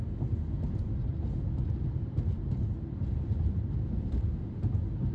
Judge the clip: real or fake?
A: real